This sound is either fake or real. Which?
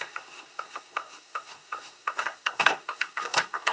fake